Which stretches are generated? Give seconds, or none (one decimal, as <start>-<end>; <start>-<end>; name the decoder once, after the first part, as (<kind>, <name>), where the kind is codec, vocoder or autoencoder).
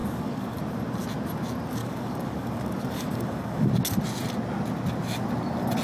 0.0-0.6 (codec, DAC); 1.8-3.7